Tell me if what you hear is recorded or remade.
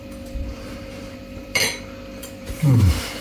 remade